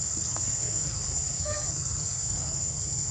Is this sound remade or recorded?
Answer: remade